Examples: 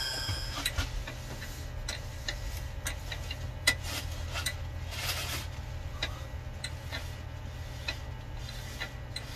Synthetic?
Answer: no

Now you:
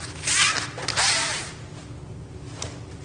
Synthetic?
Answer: no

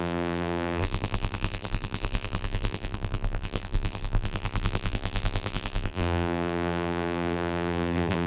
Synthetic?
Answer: yes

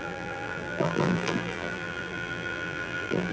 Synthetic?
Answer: yes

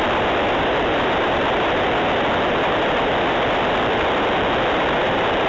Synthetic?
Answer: yes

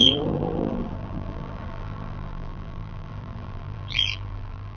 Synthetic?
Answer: yes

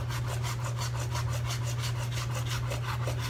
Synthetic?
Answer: no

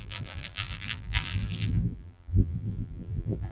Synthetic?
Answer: yes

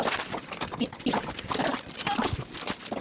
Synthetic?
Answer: no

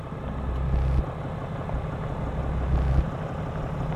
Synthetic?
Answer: no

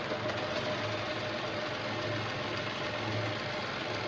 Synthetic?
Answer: no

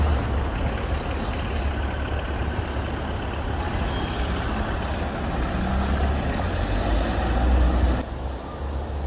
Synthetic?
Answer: no